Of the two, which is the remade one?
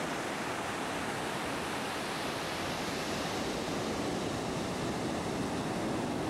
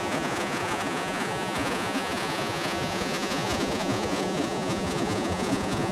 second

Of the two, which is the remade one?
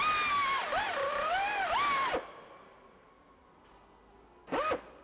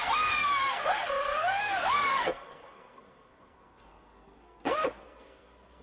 second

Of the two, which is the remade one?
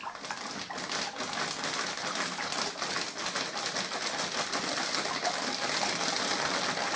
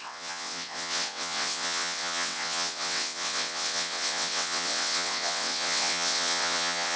second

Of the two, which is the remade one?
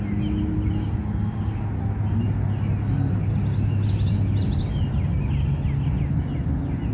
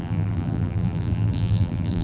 second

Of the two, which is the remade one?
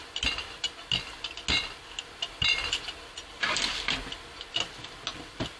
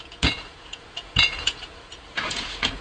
second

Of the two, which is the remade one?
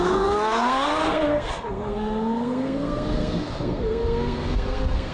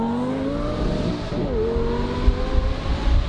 first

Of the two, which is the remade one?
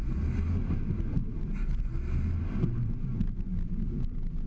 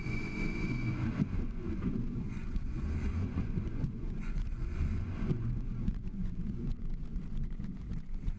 second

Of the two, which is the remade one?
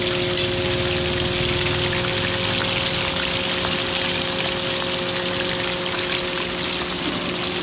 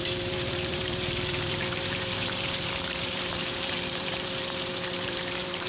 second